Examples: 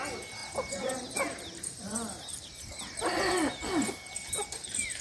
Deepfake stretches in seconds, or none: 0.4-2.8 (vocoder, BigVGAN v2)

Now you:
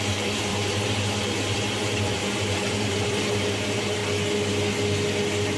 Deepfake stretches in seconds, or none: 0.0-4.0 (vocoder, BigVGAN v2)

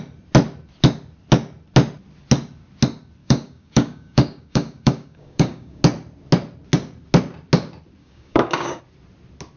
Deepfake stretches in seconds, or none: 3.2-5.8 (codec, DAC); 8.0-8.8

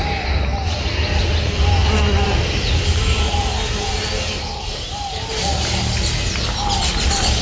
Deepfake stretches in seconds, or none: none

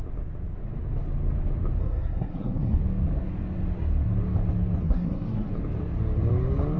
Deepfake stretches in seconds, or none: 1.8-2.8 (codec, SNAC); 4.8-5.5